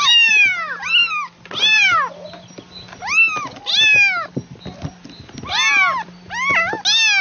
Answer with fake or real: real